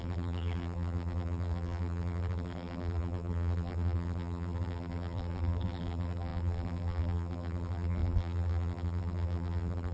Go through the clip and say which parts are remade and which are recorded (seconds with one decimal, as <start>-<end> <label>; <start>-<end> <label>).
0.0-9.9 remade